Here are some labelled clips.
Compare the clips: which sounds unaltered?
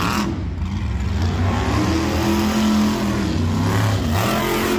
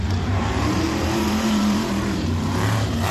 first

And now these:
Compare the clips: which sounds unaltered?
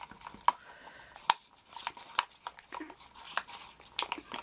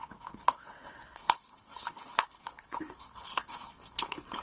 first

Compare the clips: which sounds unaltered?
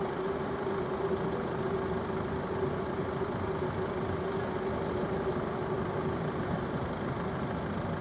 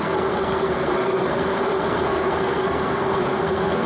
first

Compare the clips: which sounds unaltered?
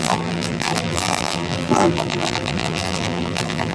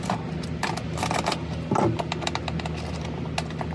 second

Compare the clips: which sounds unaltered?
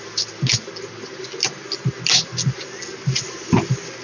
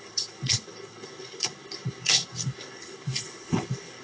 first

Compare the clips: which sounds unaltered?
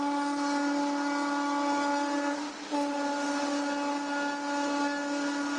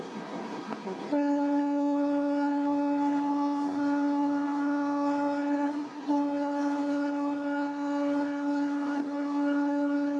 first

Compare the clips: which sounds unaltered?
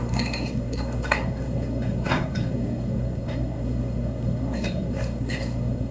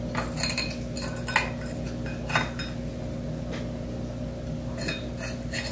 second